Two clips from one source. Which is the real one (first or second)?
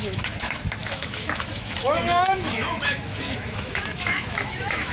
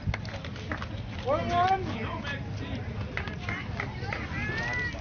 second